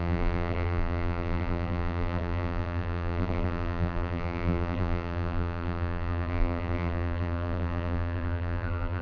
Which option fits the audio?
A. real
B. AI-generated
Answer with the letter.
B